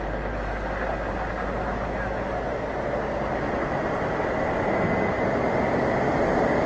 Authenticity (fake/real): real